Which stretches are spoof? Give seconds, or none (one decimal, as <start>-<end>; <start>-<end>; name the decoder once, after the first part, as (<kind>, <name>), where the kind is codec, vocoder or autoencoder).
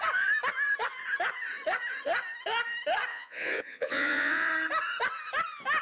3.1-4.5 (vocoder, Vocos)